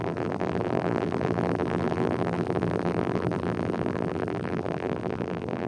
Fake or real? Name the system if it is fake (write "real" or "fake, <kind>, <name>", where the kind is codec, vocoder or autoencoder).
fake, vocoder, BigVGAN v2